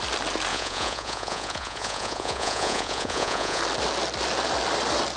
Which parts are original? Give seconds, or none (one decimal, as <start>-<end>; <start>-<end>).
0.0-0.5; 3.6-5.2

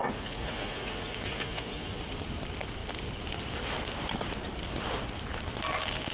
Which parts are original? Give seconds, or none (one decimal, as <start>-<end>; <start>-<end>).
2.0-6.1

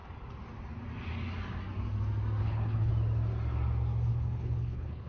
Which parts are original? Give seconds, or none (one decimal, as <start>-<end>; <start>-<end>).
0.0-2.4; 2.9-4.1